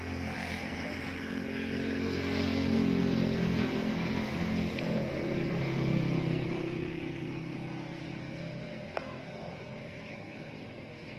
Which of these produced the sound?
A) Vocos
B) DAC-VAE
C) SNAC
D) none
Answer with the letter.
C